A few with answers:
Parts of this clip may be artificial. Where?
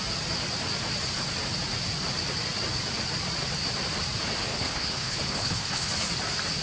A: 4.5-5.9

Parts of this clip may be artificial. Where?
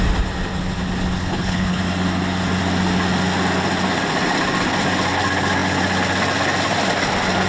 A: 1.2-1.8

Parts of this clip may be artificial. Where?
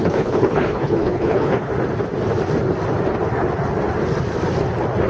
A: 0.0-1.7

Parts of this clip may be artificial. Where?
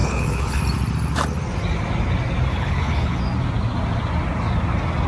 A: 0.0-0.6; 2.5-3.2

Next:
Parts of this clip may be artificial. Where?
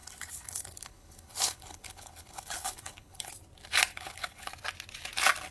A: 0.0-3.3; 3.9-4.5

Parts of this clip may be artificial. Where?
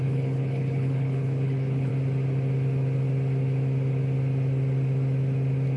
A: 0.0-1.9